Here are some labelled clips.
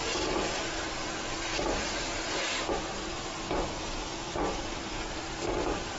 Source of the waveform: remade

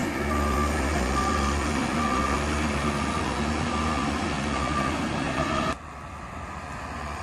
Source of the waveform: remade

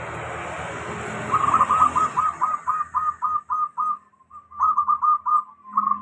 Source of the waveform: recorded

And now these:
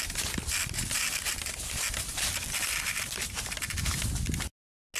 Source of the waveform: recorded